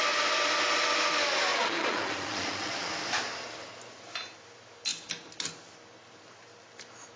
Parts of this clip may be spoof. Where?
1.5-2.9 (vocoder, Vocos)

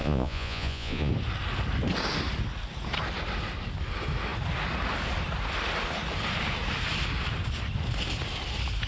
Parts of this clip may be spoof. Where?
0.0-1.1 (vocoder, Vocos)

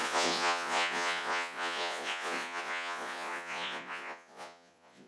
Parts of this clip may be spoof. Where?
0.0-5.1 (vocoder, Vocos)

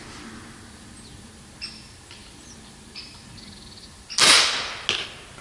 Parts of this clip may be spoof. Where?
none

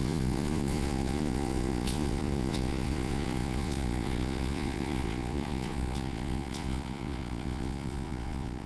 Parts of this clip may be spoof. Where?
0.0-8.7 (vocoder, Vocos)

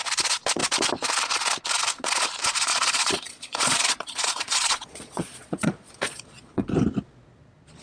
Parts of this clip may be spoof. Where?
2.7-6.6 (vocoder, Vocos)